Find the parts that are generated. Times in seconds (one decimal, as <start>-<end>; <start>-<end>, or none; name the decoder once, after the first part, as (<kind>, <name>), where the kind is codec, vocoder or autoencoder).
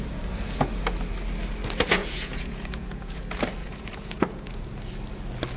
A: 2.0-3.2 (vocoder, Vocos); 3.6-4.7